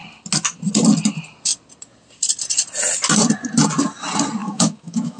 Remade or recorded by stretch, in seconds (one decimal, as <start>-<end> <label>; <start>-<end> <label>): 0.0-4.4 recorded; 4.4-5.2 remade

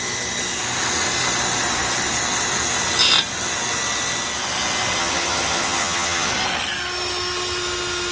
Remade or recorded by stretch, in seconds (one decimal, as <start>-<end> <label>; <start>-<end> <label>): 0.0-5.0 recorded; 5.0-6.3 remade; 6.3-8.1 recorded